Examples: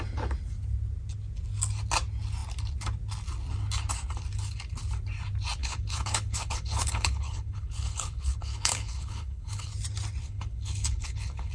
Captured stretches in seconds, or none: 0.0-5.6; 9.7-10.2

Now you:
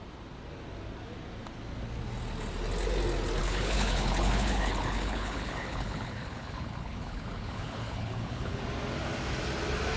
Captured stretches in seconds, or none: 0.0-3.4; 8.6-10.0

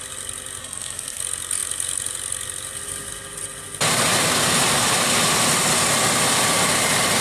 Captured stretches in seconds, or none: 0.0-0.6; 1.2-7.2

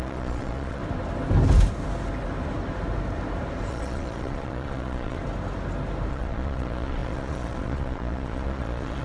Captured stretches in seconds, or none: 0.8-3.7; 5.2-6.1

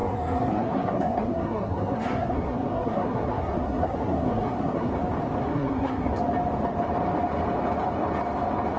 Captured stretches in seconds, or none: 4.9-5.4; 6.1-8.8

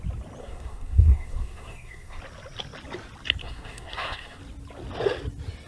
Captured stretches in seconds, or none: 0.0-0.4; 2.2-3.4; 4.4-5.7